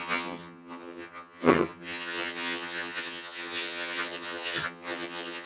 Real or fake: fake